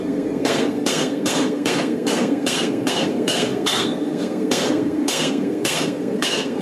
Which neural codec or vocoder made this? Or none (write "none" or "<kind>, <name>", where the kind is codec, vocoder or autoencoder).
codec, SNAC